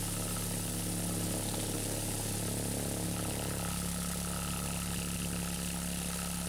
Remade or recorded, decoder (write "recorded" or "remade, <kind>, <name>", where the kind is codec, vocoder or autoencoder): recorded